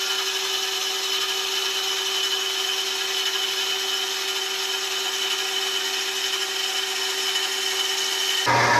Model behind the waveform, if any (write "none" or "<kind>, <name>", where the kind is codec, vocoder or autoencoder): none